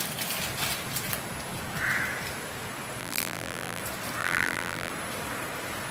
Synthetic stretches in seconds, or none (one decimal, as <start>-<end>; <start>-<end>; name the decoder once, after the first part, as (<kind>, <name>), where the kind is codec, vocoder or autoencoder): 3.0-3.8 (vocoder, BigVGAN v2); 4.2-4.9